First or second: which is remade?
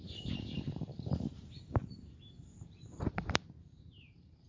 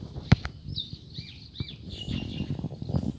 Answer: first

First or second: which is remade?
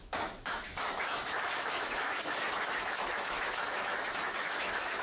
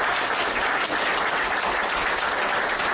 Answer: first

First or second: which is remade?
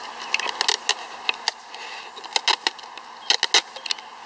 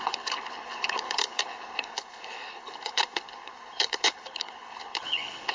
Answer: second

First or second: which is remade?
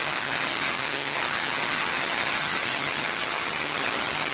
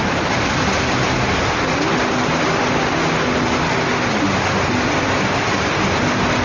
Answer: first